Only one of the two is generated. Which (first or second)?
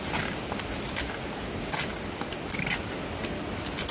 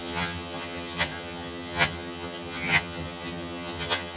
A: second